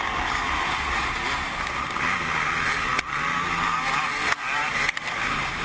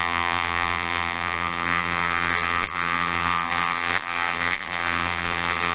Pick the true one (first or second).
first